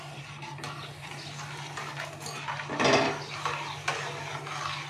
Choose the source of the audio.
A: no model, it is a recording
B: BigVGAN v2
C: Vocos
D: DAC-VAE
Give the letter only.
A